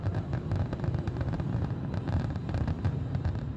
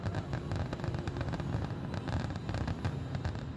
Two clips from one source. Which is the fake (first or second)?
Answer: first